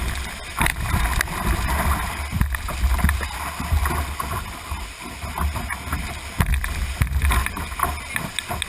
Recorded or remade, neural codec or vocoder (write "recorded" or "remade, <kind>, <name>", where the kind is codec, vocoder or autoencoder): recorded